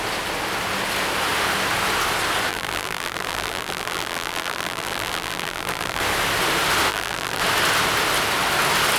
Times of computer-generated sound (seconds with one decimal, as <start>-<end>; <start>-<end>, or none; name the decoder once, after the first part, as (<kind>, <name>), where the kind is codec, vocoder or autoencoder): 2.5-6.0 (vocoder, BigVGAN v2); 6.9-7.4